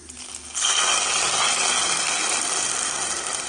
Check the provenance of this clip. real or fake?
real